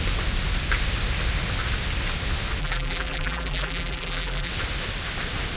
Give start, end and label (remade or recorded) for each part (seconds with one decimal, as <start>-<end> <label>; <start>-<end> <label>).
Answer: 0.0-2.6 recorded; 2.6-4.5 remade; 4.5-5.6 recorded